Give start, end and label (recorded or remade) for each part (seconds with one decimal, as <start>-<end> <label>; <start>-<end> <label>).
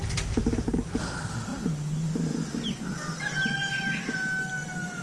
0.0-5.0 recorded